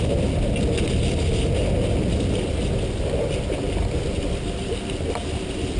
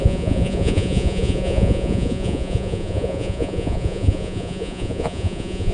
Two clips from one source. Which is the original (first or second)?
first